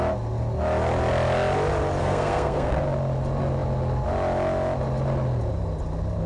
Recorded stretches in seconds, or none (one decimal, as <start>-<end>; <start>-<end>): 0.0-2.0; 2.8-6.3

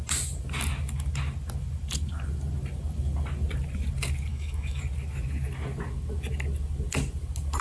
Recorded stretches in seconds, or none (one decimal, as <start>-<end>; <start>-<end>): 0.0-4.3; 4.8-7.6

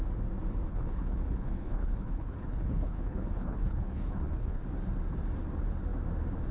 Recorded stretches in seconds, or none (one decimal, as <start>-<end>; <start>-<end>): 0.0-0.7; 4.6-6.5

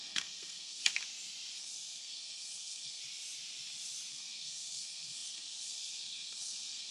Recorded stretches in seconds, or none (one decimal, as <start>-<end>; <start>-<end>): 0.8-1.6; 3.0-4.1

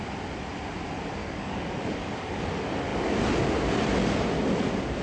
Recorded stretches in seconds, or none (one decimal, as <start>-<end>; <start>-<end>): 0.0-1.2; 2.4-5.0

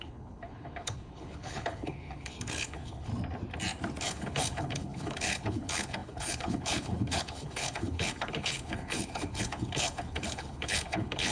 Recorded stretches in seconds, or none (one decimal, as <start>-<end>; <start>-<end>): 3.1-4.0

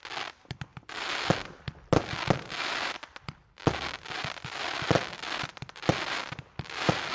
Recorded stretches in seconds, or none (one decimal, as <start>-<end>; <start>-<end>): 0.0-7.1

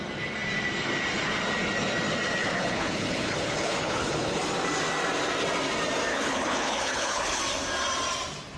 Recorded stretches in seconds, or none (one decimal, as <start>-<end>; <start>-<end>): 0.0-2.4; 4.4-6.1; 7.4-8.6